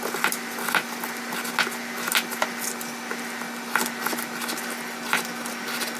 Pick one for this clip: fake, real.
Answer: real